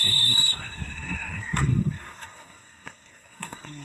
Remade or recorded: remade